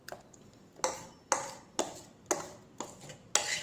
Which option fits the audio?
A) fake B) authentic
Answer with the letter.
B